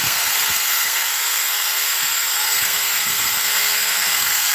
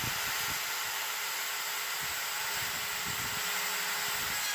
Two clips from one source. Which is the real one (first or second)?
second